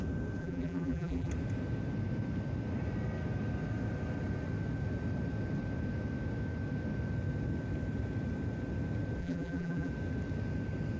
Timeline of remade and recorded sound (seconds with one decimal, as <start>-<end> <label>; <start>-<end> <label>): 0.0-0.4 recorded; 0.4-1.3 remade; 1.3-9.2 recorded; 9.2-9.9 remade; 9.9-11.0 recorded